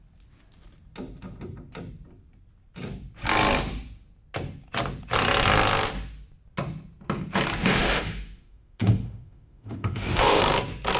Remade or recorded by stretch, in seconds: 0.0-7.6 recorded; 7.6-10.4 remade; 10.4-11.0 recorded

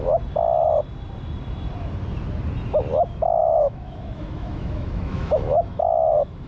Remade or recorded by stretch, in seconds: 0.0-3.4 recorded; 3.4-6.5 remade

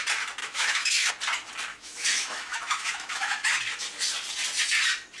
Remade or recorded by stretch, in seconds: 0.0-0.4 recorded; 0.4-1.1 remade; 1.1-1.7 recorded; 1.7-3.6 remade; 3.6-5.2 recorded

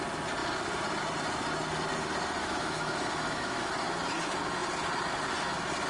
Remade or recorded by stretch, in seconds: 0.0-2.4 recorded; 2.4-3.7 remade; 3.7-5.9 recorded

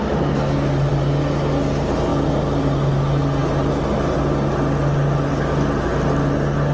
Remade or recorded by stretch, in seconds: 0.0-6.7 recorded

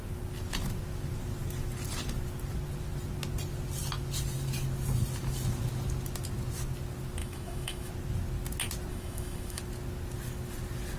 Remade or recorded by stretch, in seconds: 0.0-7.2 recorded; 7.2-7.9 remade; 7.9-8.9 recorded; 8.9-9.6 remade; 9.6-11.0 recorded